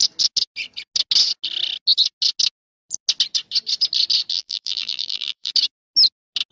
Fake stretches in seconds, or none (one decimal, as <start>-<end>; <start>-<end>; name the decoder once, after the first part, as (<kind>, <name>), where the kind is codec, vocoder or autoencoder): 4.3-5.5 (vocoder, BigVGAN v2)